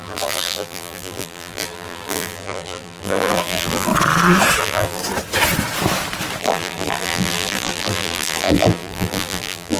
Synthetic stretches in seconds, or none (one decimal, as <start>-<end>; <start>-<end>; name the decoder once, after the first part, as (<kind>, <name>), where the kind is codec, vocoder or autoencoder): 0.0-3.9 (vocoder, BigVGAN v2); 4.6-5.0; 6.4-9.8